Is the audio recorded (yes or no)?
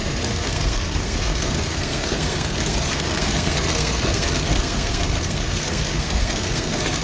no